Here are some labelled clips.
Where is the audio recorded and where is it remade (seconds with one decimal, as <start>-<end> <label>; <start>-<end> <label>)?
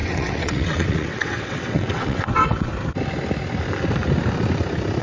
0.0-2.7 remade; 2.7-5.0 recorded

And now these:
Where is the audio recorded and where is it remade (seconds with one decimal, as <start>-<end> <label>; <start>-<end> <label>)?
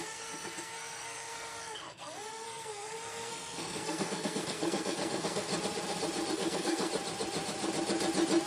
0.0-5.5 remade; 5.5-6.3 recorded; 6.3-6.9 remade; 6.9-8.5 recorded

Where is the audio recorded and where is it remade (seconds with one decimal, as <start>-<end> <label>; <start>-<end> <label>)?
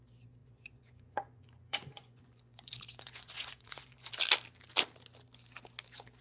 0.0-0.4 recorded; 0.4-4.1 remade; 4.1-6.2 recorded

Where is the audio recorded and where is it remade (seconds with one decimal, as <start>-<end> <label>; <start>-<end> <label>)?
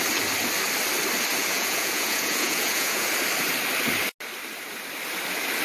0.0-1.4 recorded; 1.4-3.1 remade; 3.1-5.6 recorded